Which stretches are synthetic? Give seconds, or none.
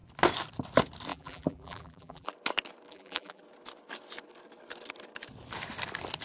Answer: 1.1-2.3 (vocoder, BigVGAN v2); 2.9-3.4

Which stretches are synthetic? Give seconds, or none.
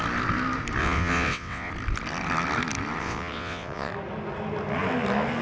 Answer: 0.8-1.7 (vocoder, WaveNeXt); 3.0-3.9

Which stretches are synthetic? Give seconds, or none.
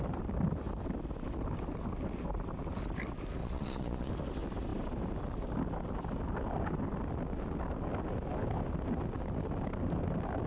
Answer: 3.4-4.1 (vocoder, Vocos)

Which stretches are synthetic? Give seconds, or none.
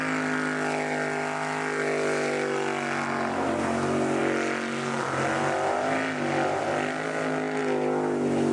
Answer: none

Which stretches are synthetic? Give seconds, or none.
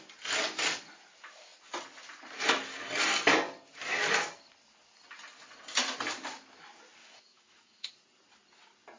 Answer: 7.0-7.9 (autoencoder, DAC-VAE)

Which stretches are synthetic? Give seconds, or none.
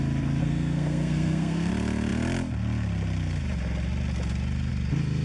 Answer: 0.4-1.7 (codec, SNAC)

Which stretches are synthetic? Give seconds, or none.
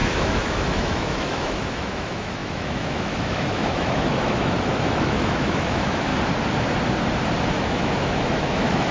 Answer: 0.0-6.1 (autoencoder, DAC-VAE); 7.5-8.9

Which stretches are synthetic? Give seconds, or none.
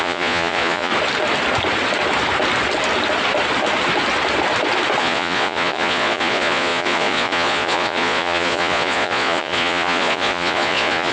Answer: 0.0-0.9 (vocoder, Vocos); 5.0-11.1